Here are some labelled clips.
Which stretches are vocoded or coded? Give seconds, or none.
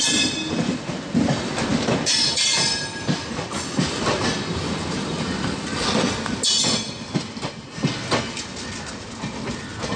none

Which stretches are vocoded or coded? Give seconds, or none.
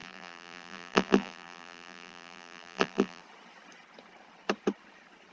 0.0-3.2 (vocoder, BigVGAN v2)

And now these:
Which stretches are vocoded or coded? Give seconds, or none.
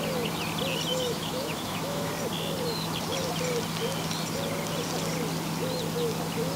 0.9-2.1 (autoencoder, DAC-VAE)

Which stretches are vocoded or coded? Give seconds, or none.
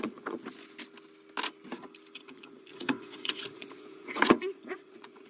0.0-0.4 (vocoder, Vocos); 2.2-5.3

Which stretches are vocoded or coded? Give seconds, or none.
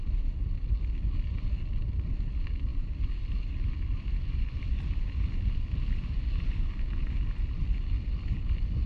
none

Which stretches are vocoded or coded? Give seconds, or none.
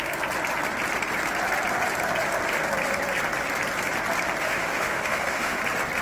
4.4-5.6 (autoencoder, DAC-VAE)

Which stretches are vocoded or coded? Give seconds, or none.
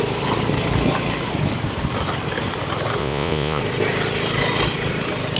3.0-3.6 (vocoder, Vocos)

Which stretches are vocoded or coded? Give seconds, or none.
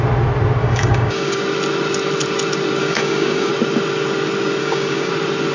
0.6-1.4 (codec, DAC); 2.8-3.5; 4.6-5.1